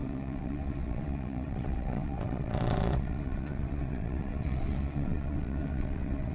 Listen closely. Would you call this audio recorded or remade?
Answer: remade